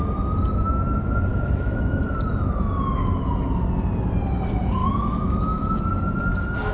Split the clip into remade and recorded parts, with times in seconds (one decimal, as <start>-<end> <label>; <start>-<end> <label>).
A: 0.0-1.3 recorded; 1.3-2.0 remade; 2.0-4.8 recorded; 4.8-5.8 remade; 5.8-6.7 recorded